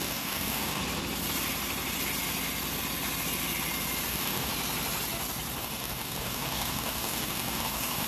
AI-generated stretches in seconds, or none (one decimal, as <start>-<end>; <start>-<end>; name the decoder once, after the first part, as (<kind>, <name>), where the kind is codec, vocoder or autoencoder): 0.0-0.8 (codec, DAC); 4.1-4.5; 5.6-8.1